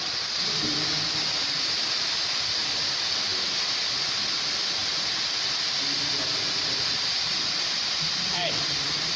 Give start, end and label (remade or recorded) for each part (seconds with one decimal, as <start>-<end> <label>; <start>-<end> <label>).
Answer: 0.0-3.3 remade; 3.3-3.9 recorded; 3.9-4.8 remade; 4.8-5.3 recorded; 5.3-9.2 remade